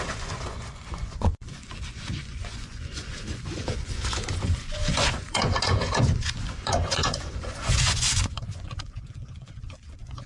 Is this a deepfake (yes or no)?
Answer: yes